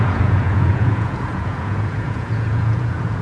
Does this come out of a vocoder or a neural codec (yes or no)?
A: yes